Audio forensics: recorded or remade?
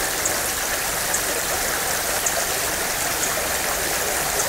recorded